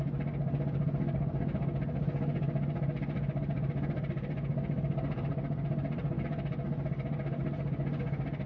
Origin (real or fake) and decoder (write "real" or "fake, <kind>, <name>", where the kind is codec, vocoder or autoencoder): real